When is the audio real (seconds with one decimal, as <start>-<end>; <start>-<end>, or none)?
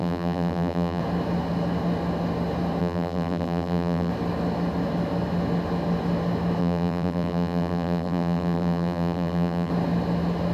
1.0-2.8; 4.1-6.6; 9.7-10.5